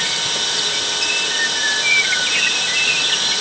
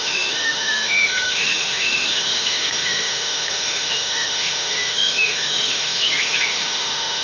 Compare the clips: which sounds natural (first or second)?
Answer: first